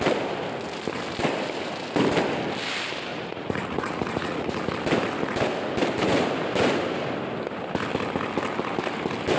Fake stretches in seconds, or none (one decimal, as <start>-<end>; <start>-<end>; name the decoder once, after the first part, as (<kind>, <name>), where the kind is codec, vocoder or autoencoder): 3.1-4.7 (vocoder, Vocos)